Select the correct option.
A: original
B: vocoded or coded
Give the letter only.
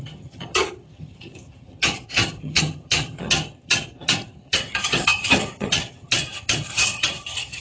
B